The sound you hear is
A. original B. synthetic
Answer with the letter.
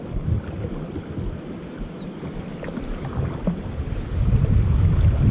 A